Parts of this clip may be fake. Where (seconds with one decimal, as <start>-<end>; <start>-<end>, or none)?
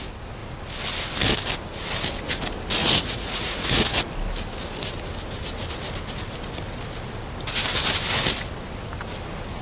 2.8-4.0